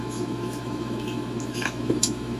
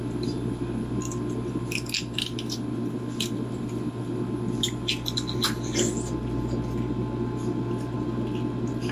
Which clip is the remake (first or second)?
first